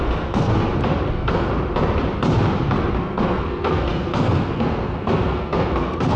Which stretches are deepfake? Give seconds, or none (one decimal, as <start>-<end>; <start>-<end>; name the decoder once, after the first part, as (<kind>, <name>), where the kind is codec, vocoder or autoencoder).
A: 0.0-0.5 (codec, SNAC); 1.1-1.5; 3.0-6.2